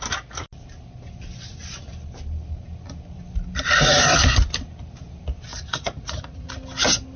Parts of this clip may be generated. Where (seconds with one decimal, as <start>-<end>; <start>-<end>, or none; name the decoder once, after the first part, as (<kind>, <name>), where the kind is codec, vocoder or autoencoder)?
5.5-6.5 (vocoder, Vocos)